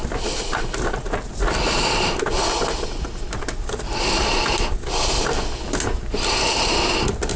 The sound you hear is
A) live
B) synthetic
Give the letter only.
A